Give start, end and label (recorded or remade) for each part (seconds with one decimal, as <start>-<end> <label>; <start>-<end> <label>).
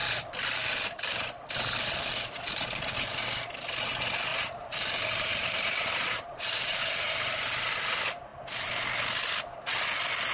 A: 0.0-0.7 remade; 0.7-4.3 recorded; 4.3-7.7 remade; 7.7-10.3 recorded